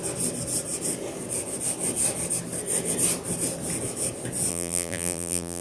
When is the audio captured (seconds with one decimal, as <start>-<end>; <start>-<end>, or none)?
0.0-4.5